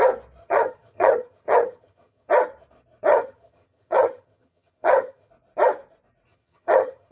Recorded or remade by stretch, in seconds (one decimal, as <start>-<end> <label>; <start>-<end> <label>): 0.0-0.4 recorded; 0.4-2.3 remade; 2.3-3.1 recorded; 3.1-5.3 remade; 5.3-6.3 recorded; 6.3-7.1 remade